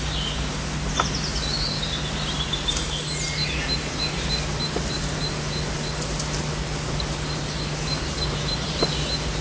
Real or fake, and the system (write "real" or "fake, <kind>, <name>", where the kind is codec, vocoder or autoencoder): real